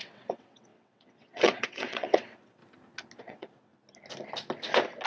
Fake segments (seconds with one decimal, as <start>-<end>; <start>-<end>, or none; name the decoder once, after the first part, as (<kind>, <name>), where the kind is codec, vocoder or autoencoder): 0.0-2.6 (vocoder, WaveNeXt); 3.2-3.7